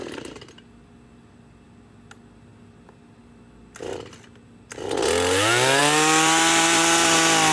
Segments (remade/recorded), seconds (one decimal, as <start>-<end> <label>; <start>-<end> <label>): 0.0-7.5 recorded